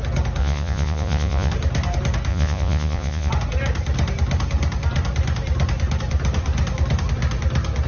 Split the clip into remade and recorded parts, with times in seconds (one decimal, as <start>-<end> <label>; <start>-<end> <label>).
0.0-0.4 recorded; 0.4-1.5 remade; 1.5-2.3 recorded; 2.3-3.3 remade; 3.3-7.9 recorded